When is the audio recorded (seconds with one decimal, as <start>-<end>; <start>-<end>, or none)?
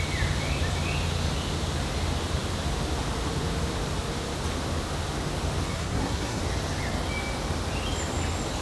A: 0.0-5.7; 6.4-8.6